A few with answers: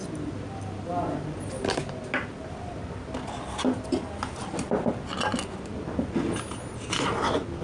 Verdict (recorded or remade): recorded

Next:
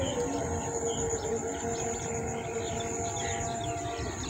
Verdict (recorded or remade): recorded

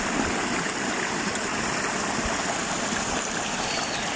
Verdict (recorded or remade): recorded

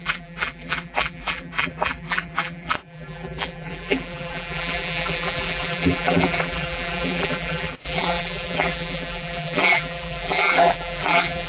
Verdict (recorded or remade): remade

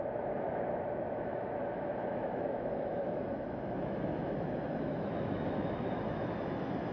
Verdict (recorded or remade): remade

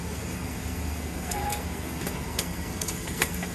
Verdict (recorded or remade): remade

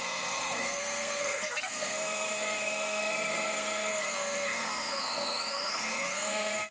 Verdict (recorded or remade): remade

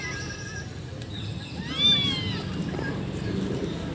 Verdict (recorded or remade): recorded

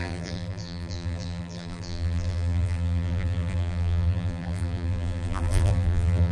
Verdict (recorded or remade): remade